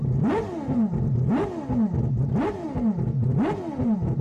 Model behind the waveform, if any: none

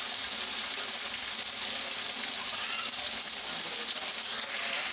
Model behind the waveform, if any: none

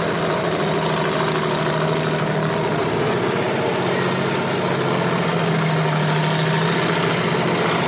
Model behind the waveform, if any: none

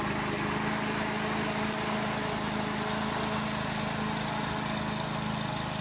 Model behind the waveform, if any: none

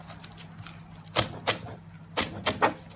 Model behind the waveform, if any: none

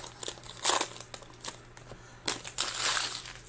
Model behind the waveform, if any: none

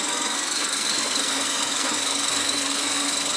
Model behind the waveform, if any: codec, SNAC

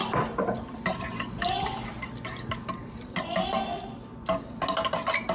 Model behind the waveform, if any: none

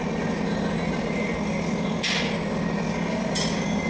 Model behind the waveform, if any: none